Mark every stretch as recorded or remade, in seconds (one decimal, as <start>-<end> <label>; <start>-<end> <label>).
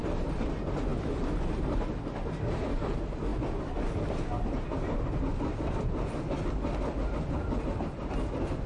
0.0-0.5 remade; 0.5-0.9 recorded; 0.9-2.8 remade; 2.8-8.7 recorded